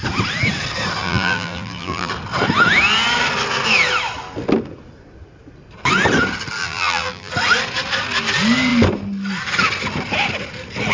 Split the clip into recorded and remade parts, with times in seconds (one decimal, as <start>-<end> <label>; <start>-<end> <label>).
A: 0.0-1.0 recorded; 1.0-2.1 remade; 2.1-6.6 recorded; 6.6-7.3 remade; 7.3-10.9 recorded